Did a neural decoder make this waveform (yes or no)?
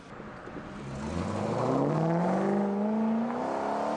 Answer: no